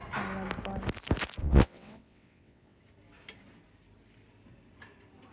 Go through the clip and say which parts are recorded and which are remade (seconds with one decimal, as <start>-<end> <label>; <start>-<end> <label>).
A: 0.0-1.4 recorded; 1.4-2.8 remade; 2.8-5.3 recorded